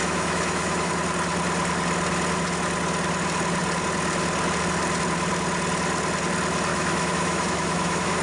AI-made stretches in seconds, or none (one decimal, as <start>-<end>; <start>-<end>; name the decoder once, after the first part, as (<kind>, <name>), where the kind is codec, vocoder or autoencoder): 0.0-0.9 (autoencoder, DAC-VAE); 6.7-8.2